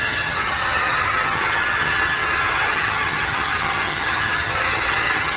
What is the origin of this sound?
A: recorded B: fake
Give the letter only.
B